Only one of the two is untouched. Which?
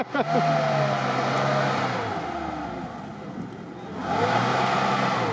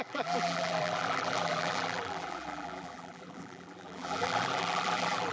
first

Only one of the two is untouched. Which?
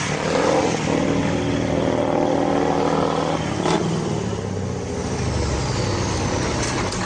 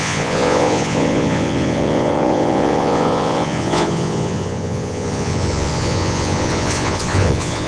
first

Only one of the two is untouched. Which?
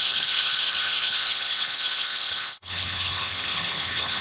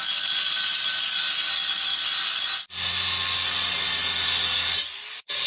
second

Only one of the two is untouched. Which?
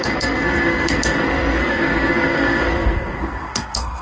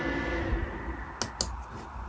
second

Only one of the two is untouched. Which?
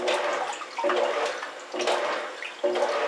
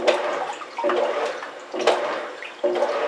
first